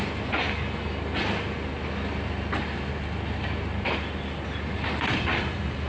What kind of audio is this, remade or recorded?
recorded